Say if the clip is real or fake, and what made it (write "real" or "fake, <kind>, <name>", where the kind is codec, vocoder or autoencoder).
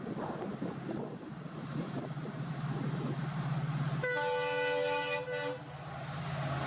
real